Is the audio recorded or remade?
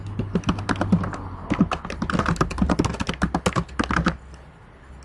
recorded